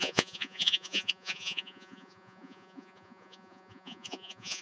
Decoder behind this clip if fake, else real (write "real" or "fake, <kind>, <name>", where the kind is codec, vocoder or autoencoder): fake, vocoder, Vocos